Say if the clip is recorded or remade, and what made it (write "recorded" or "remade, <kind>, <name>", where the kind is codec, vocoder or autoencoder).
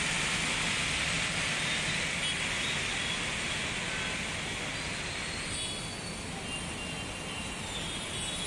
recorded